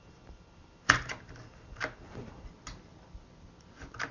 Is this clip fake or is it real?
real